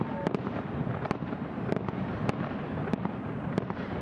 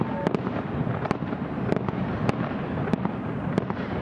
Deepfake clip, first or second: first